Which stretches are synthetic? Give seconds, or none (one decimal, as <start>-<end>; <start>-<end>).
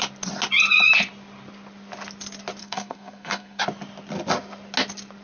2.6-3.6